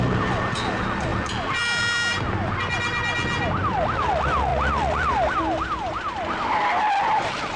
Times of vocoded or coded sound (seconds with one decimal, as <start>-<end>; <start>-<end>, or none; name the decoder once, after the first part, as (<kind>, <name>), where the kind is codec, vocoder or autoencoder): none